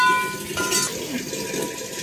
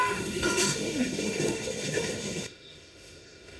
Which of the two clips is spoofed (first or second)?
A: second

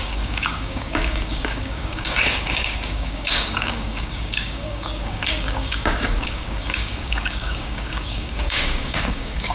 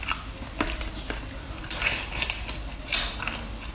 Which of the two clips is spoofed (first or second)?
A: first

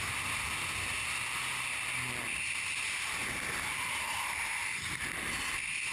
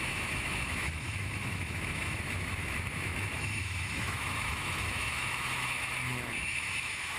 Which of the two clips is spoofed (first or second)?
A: second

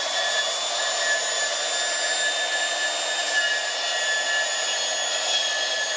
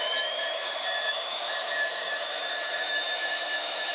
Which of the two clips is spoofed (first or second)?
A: second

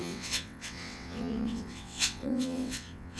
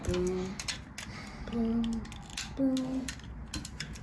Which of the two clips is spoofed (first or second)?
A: first